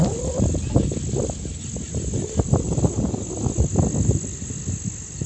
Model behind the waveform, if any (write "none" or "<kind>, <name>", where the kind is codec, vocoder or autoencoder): none